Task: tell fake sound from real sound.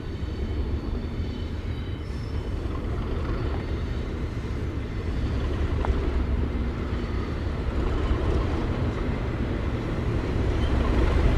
fake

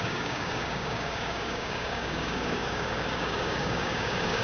fake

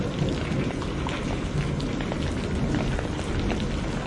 real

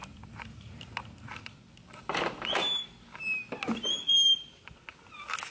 real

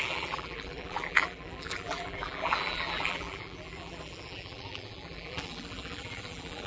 fake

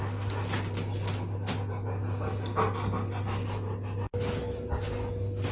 real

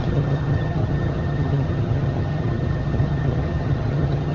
fake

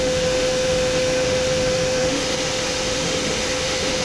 fake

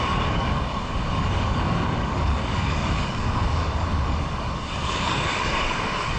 fake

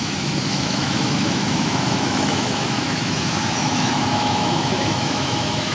fake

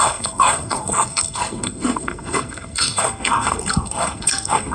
fake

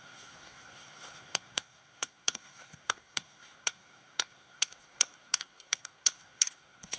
fake